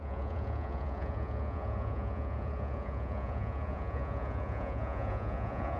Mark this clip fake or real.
fake